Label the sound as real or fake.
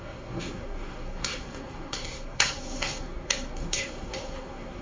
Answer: fake